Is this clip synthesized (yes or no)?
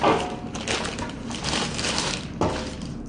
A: no